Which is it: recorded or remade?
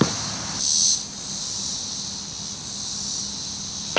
recorded